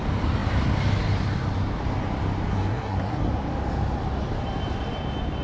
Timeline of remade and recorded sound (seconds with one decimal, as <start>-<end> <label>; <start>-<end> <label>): 0.0-2.5 recorded; 2.5-3.3 remade; 3.3-5.4 recorded